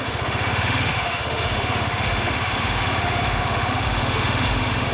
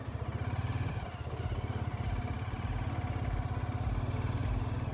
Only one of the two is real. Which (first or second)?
second